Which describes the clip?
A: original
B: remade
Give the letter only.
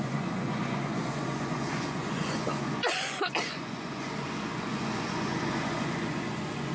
B